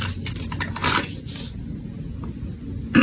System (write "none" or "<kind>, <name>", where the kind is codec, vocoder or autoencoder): none